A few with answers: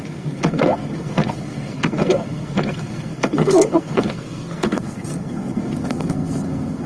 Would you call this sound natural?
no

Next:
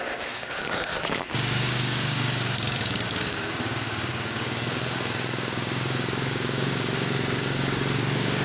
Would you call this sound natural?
no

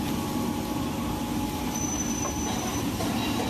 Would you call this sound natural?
yes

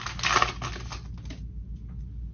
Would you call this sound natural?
yes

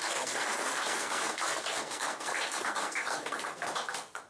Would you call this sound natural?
no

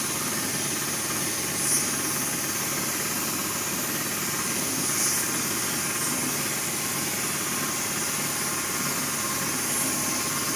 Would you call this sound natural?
yes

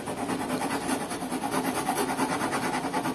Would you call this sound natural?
yes